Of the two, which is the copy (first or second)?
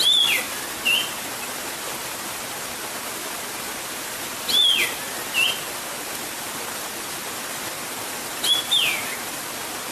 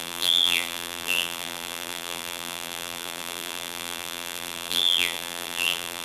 second